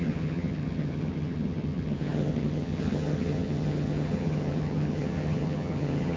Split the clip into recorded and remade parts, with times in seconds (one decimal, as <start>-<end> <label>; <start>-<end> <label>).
0.0-6.2 remade

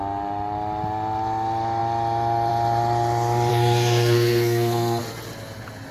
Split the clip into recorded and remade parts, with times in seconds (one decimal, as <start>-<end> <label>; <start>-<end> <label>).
0.0-3.5 recorded; 3.5-5.0 remade; 5.0-5.9 recorded

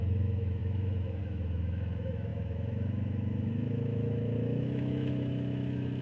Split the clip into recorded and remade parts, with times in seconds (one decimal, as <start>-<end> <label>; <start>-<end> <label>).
0.0-6.0 remade

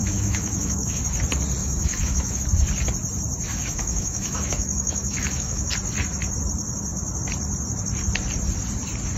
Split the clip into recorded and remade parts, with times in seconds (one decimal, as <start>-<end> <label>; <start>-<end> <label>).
0.0-1.0 remade; 1.0-1.6 recorded; 1.6-2.4 remade; 2.4-3.5 recorded; 3.5-5.7 remade; 5.7-9.2 recorded

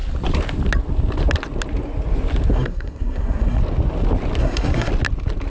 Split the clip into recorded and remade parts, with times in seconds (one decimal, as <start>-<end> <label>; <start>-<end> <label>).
0.0-2.5 recorded; 2.5-3.6 remade; 3.6-4.4 recorded; 4.4-4.9 remade; 4.9-5.5 recorded

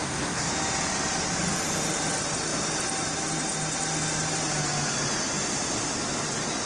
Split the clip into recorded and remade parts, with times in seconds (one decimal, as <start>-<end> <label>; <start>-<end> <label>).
0.0-0.5 remade; 0.5-6.7 recorded

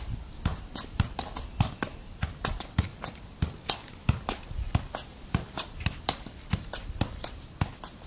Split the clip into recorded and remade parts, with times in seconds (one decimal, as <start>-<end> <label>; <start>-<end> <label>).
0.0-0.5 recorded; 0.5-1.1 remade; 1.1-2.9 recorded; 2.9-3.4 remade; 3.4-5.1 recorded; 5.1-6.9 remade; 6.9-8.1 recorded

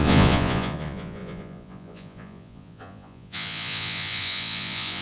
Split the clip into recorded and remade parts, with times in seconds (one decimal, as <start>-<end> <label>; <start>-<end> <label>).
0.0-5.0 remade